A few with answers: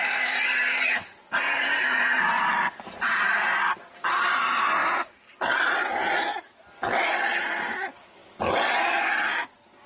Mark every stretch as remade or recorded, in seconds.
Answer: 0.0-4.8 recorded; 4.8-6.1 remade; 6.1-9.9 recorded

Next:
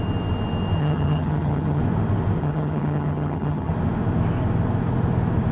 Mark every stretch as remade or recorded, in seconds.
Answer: 0.0-0.8 recorded; 0.8-1.8 remade; 1.8-2.4 recorded; 2.4-3.7 remade; 3.7-5.5 recorded

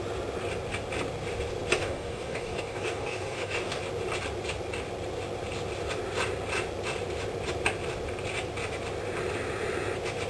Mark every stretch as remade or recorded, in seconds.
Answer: 0.0-1.8 recorded; 1.8-3.8 remade; 3.8-10.3 recorded

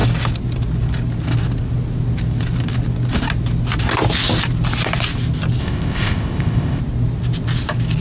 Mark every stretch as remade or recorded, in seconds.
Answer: 0.0-5.6 recorded; 5.6-6.8 remade; 6.8-8.0 recorded

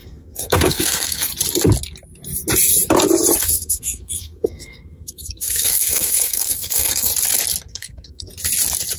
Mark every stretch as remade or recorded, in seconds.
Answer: 0.0-1.3 remade; 1.3-3.4 recorded; 3.4-7.1 remade; 7.1-7.7 recorded; 7.7-8.3 remade; 8.3-9.0 recorded

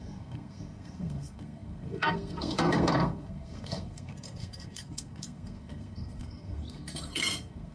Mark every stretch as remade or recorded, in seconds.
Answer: 0.0-7.7 remade

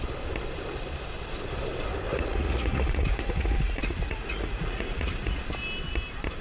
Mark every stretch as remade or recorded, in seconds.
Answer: 0.0-2.1 recorded; 2.1-5.4 remade; 5.4-6.4 recorded

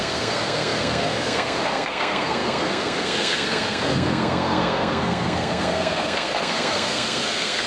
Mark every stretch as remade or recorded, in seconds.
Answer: 0.0-7.7 remade